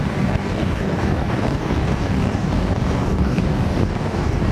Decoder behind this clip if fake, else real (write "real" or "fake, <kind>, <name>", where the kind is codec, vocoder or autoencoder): fake, codec, DAC